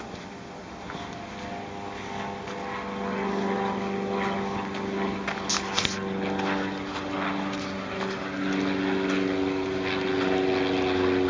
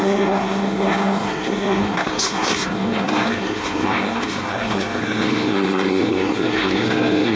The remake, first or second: second